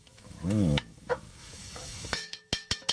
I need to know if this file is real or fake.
fake